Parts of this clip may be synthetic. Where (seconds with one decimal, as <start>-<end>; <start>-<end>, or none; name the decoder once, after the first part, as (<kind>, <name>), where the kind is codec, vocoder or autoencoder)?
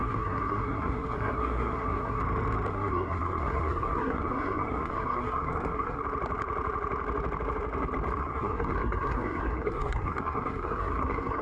0.0-2.2 (codec, SNAC); 2.7-6.0; 8.2-11.4